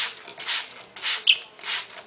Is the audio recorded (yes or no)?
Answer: yes